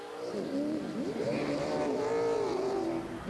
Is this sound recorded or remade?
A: recorded